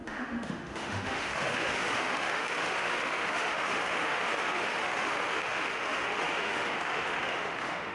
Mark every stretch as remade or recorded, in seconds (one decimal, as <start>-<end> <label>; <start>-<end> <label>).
0.0-7.9 remade

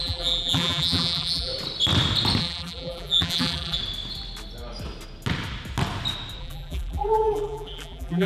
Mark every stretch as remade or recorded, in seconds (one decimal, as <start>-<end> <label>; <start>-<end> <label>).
0.0-1.5 remade; 1.5-2.4 recorded; 2.4-3.8 remade; 3.8-6.4 recorded; 6.4-8.3 remade

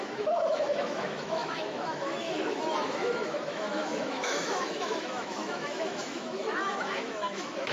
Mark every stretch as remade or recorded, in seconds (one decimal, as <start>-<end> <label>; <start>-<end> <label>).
0.0-7.7 remade

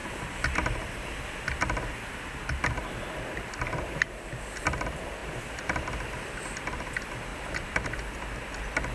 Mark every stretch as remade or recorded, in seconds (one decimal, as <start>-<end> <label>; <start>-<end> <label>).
0.0-5.2 recorded; 5.2-6.3 remade; 6.3-7.3 recorded; 7.3-8.9 remade

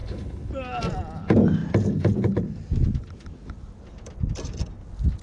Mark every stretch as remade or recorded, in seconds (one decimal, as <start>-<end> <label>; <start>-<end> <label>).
0.0-0.5 remade; 0.5-5.2 recorded

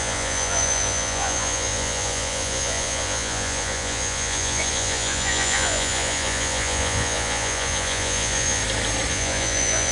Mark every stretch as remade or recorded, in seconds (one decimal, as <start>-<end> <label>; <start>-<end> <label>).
0.0-8.6 remade; 8.6-9.1 recorded; 9.1-9.9 remade